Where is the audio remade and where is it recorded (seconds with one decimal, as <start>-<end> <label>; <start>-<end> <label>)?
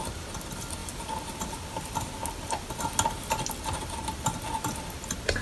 0.0-5.4 recorded